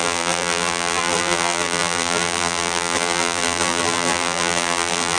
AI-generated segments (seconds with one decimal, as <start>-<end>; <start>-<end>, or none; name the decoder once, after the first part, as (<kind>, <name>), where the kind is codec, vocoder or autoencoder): 0.0-5.2 (vocoder, BigVGAN v2)